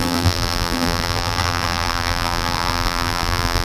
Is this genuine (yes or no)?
no